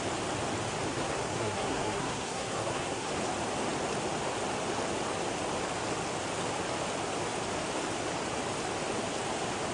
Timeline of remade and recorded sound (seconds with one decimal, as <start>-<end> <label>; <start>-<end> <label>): 0.0-0.9 recorded; 0.9-3.1 remade; 3.1-9.7 recorded